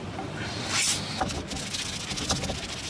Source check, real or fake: real